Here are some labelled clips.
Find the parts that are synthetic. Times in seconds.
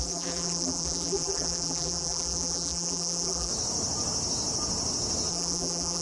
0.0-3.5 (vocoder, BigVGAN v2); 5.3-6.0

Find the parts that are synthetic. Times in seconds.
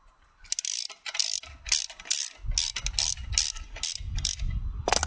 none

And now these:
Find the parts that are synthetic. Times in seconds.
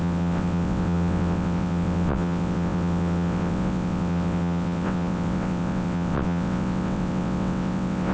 0.0-8.1 (vocoder, WaveNeXt)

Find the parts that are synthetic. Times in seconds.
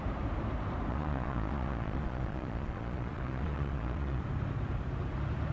0.9-4.2 (vocoder, Vocos)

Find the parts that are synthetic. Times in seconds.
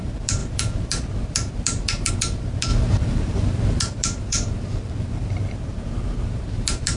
0.0-7.0 (vocoder, BigVGAN v2)